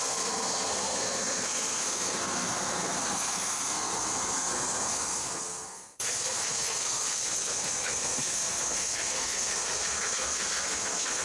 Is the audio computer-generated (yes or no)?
yes